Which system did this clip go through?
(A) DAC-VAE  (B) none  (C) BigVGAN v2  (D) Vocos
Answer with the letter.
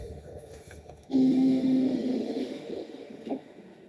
A